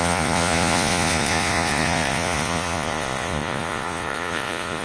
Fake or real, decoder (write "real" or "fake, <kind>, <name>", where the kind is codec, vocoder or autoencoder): fake, vocoder, Vocos